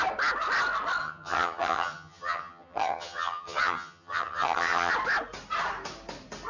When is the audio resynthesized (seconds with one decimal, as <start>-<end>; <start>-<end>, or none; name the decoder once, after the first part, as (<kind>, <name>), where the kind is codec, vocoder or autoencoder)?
1.0-4.9 (vocoder, HiFi-GAN)

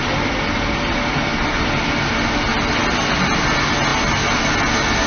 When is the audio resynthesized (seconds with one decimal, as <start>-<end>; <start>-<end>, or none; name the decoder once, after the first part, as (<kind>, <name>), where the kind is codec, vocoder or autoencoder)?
none

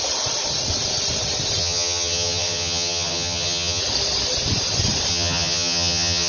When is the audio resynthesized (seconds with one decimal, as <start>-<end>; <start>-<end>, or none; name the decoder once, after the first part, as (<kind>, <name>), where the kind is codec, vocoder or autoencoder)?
1.6-3.8 (vocoder, HiFi-GAN); 5.1-6.3

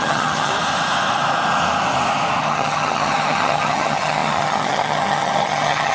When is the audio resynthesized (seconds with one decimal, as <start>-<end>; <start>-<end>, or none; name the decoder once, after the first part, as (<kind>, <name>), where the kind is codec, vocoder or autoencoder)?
0.0-0.5 (vocoder, HiFi-GAN); 2.4-5.9

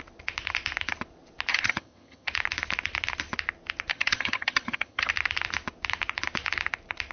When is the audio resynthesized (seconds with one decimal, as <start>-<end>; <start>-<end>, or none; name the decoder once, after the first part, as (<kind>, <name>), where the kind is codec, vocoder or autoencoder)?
1.5-2.3 (vocoder, HiFi-GAN); 3.9-5.1

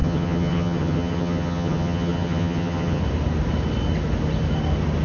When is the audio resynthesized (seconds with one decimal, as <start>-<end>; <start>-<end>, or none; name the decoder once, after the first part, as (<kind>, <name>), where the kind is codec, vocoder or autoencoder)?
0.0-3.0 (vocoder, HiFi-GAN)